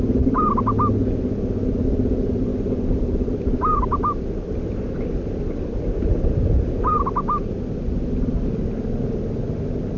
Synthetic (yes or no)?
no